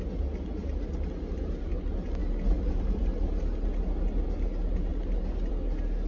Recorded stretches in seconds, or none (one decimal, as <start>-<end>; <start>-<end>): 0.0-6.1